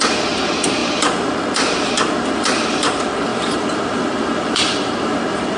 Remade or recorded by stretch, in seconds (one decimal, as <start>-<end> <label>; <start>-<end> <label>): 0.0-5.6 remade